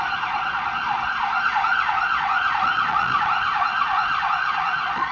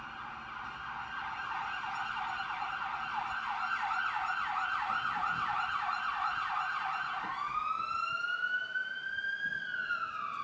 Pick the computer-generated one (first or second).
first